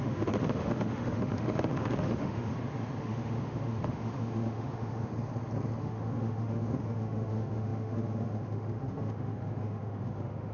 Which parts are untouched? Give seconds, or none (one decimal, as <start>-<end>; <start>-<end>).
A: 2.5-3.0; 5.1-5.8